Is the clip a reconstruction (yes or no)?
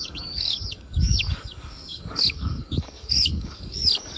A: yes